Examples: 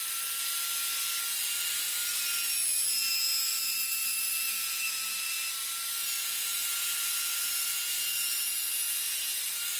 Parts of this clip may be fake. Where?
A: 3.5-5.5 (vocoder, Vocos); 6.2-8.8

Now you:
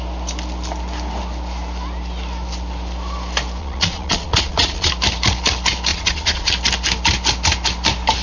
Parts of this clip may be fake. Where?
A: 3.6-4.9 (vocoder, Vocos); 5.9-6.5

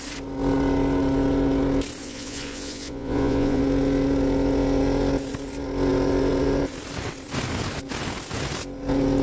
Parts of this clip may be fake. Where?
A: 2.0-3.6 (vocoder, Vocos)

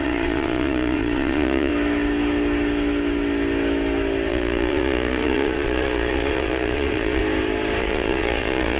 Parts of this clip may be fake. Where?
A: 0.0-1.7 (vocoder, Vocos); 4.3-7.2; 7.8-8.8

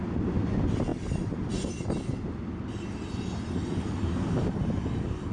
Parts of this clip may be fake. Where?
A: none